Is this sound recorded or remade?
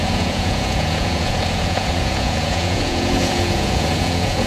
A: remade